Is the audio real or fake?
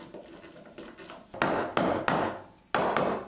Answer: real